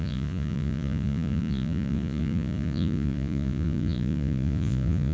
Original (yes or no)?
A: no